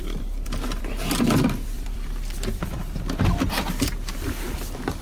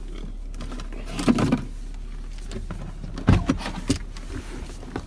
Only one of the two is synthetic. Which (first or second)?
first